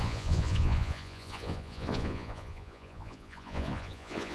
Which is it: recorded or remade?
remade